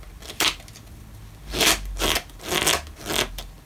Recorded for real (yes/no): yes